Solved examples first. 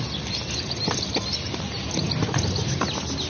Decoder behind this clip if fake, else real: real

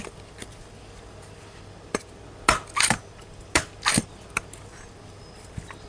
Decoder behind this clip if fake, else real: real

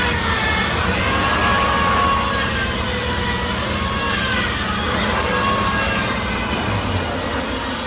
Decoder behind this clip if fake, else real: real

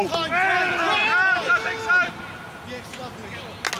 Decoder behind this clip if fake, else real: real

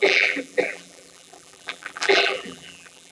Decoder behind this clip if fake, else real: fake, vocoder, BigVGAN v2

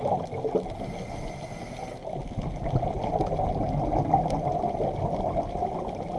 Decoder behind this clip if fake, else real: real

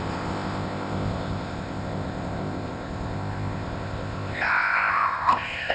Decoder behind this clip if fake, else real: fake, codec, ZipCodec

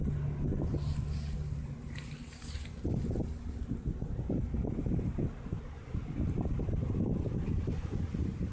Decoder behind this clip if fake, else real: real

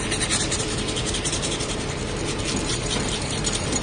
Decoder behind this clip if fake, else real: fake, vocoder, BigVGAN v2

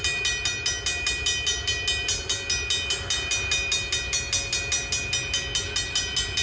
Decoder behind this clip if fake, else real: real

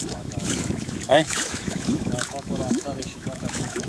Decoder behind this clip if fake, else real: fake, autoencoder, DAC-VAE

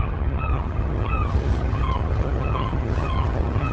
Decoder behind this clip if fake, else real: fake, vocoder, HiFi-GAN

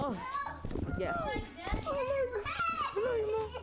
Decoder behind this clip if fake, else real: real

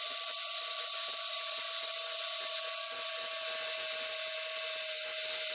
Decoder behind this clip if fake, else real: real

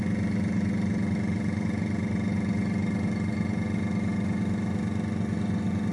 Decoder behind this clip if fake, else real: real